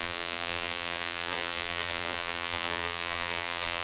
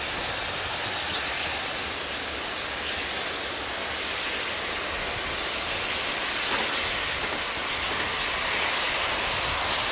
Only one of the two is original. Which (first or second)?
second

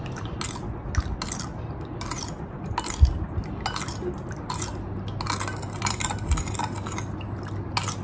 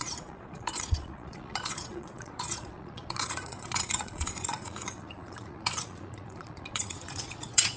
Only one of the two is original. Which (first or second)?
first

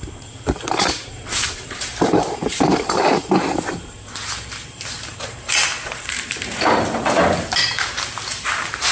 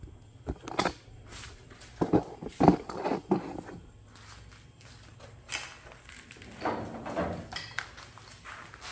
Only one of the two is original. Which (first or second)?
second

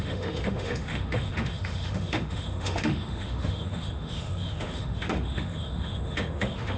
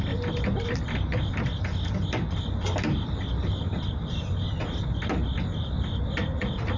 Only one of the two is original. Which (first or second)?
second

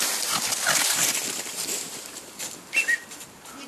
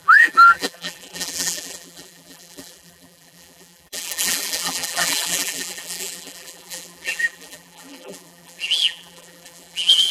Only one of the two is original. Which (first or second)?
first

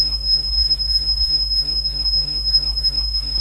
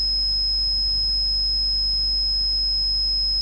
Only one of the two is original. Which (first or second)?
second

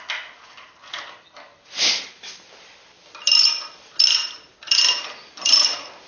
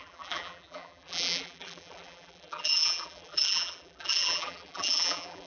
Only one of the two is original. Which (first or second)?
first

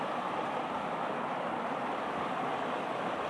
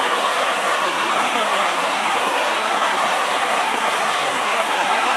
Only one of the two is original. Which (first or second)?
first